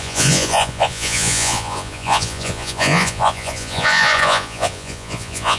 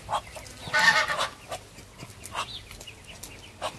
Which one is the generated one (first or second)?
first